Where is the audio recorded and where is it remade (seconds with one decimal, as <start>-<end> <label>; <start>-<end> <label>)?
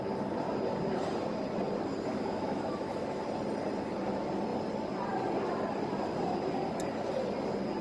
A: 0.0-2.1 recorded; 2.1-3.2 remade; 3.2-7.8 recorded